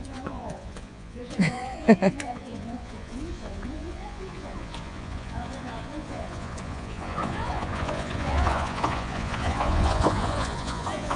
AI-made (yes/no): yes